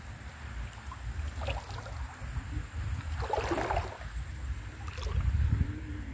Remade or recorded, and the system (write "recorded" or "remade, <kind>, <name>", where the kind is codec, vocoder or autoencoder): recorded